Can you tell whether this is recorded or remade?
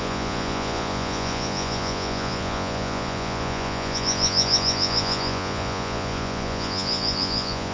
remade